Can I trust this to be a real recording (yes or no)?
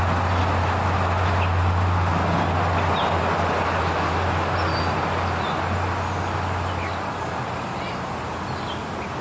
yes